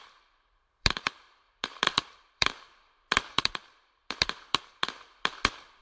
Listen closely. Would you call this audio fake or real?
fake